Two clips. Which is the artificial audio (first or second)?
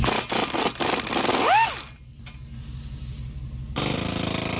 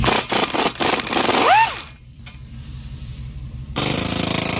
second